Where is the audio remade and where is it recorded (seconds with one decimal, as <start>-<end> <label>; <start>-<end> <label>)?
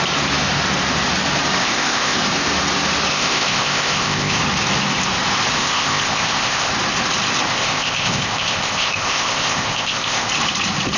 0.0-1.6 recorded; 1.6-2.2 remade; 2.2-3.1 recorded; 3.1-4.4 remade; 4.4-5.6 recorded; 5.6-6.7 remade; 6.7-7.5 recorded; 7.5-10.3 remade; 10.3-11.0 recorded